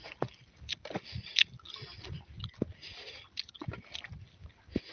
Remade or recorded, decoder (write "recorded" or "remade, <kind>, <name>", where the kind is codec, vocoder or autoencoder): recorded